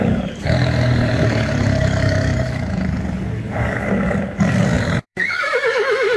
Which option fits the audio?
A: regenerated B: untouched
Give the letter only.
A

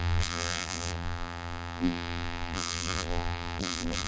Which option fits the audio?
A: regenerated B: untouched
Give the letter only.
A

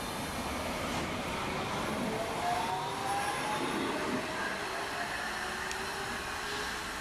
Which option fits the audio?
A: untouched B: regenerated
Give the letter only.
A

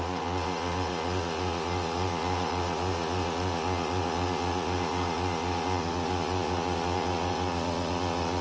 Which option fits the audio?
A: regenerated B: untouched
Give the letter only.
A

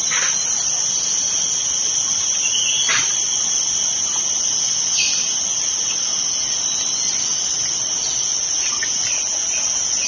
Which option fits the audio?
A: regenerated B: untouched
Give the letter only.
B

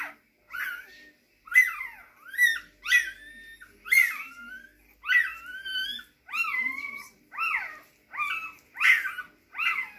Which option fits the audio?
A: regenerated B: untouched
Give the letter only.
B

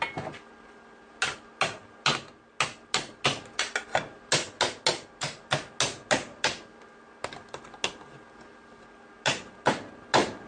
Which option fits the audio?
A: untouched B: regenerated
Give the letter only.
A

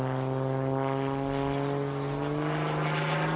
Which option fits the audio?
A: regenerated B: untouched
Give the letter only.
B